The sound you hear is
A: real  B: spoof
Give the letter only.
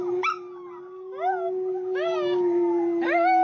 A